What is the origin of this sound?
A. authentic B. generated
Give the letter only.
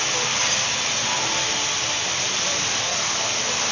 A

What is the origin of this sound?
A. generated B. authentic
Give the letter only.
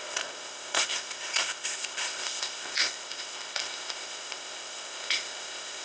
A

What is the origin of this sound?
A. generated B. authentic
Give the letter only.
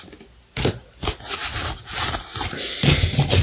B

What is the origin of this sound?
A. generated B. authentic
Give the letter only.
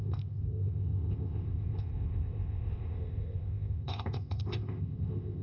A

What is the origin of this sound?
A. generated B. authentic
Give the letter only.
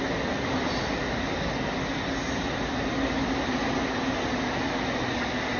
B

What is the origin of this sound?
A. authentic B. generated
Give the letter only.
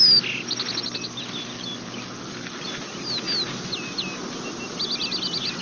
A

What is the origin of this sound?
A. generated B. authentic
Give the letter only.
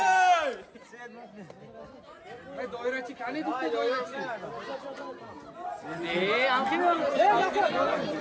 B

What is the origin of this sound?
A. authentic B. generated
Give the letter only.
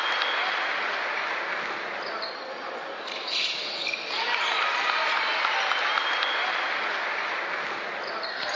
A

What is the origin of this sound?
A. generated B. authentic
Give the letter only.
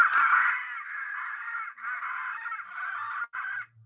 B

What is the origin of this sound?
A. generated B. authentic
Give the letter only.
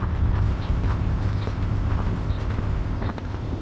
A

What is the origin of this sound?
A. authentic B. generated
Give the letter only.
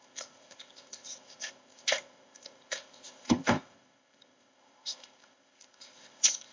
B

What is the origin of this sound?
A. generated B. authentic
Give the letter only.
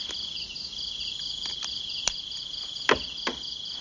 B